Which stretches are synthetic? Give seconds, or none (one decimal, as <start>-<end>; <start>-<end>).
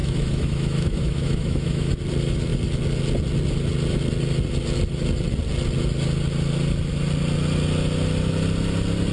0.0-1.9